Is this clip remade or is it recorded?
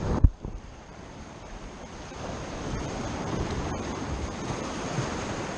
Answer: remade